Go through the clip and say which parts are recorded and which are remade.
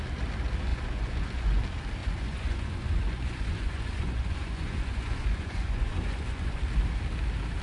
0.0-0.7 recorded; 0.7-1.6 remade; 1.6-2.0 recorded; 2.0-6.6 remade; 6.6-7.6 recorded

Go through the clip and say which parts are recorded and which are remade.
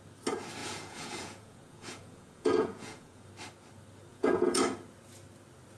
0.0-0.6 recorded; 0.6-3.3 remade; 3.3-4.1 recorded; 4.1-4.6 remade; 4.6-5.8 recorded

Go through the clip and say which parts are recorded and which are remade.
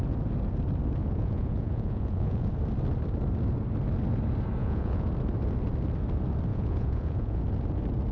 0.0-1.0 recorded; 1.0-2.5 remade; 2.5-4.6 recorded; 4.6-5.1 remade; 5.1-6.5 recorded; 6.5-7.4 remade; 7.4-8.1 recorded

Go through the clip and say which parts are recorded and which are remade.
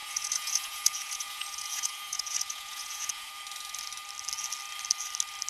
0.0-3.3 remade; 3.3-5.5 recorded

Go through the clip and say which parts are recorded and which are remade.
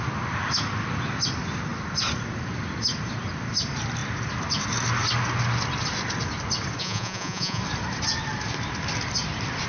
0.0-6.8 recorded; 6.8-7.6 remade; 7.6-9.7 recorded